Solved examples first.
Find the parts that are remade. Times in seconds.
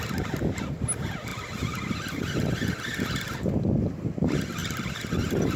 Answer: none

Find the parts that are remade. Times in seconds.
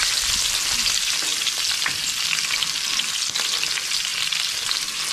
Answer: none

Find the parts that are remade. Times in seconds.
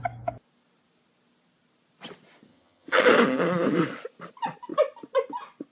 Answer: 2.5-3.0 (vocoder, HiFi-GAN)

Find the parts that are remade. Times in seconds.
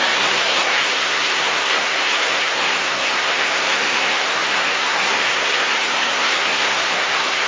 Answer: 0.0-7.5 (codec, SNAC)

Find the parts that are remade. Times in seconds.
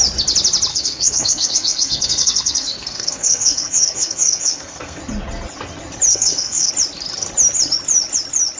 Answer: 0.7-5.0 (codec, SNAC); 6.1-6.7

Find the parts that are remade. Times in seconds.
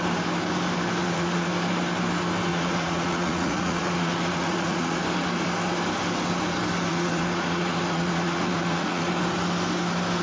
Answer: 1.0-1.5 (vocoder, Vocos); 2.5-5.0; 6.9-9.1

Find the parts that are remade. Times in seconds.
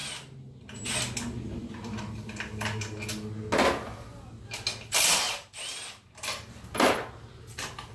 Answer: none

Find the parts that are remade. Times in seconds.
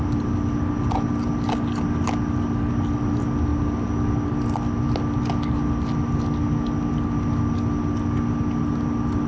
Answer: none